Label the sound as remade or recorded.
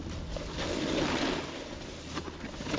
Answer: recorded